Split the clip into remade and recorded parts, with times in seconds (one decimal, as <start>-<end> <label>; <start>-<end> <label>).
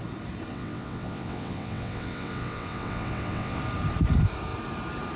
0.0-0.5 recorded; 0.5-3.6 remade; 3.6-5.2 recorded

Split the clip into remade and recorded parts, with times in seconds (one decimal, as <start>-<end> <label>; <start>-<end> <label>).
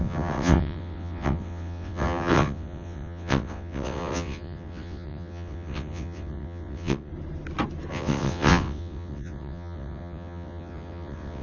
0.0-7.1 remade; 7.1-7.9 recorded; 7.9-11.4 remade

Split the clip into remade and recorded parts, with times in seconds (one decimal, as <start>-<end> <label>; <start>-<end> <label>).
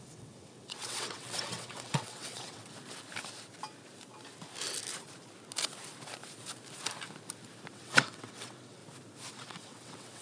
0.0-2.6 remade; 2.6-7.7 recorded; 7.7-8.8 remade; 8.8-9.3 recorded; 9.3-10.2 remade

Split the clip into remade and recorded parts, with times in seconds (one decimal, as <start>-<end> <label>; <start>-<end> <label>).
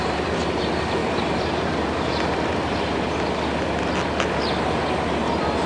0.0-5.7 recorded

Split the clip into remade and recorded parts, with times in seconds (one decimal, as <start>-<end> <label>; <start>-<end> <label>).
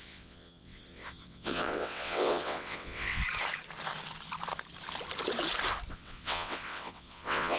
0.0-3.2 remade; 3.2-5.9 recorded; 5.9-7.6 remade